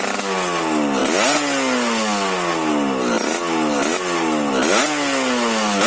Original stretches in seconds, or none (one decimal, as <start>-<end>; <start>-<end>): 0.0-5.9